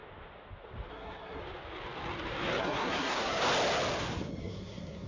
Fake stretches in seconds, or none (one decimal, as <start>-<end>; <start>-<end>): 0.9-1.4; 2.6-3.4; 4.4-5.1